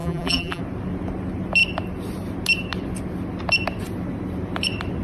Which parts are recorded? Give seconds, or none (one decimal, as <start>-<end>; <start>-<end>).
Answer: 0.6-5.0